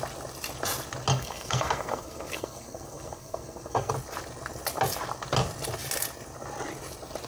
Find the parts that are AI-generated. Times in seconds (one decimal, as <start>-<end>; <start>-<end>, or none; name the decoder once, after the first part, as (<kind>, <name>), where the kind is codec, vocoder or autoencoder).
1.1-3.9 (codec, SNAC)